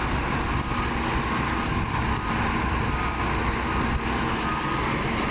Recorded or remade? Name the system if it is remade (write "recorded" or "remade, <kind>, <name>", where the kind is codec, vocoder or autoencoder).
recorded